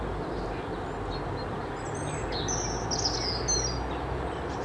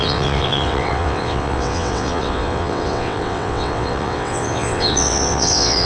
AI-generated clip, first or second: second